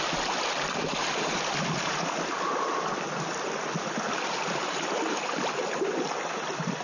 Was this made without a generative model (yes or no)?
yes